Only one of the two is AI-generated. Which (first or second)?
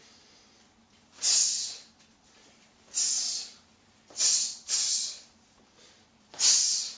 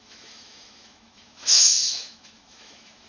second